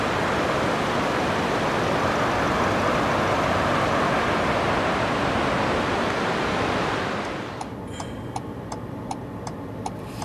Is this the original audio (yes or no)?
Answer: yes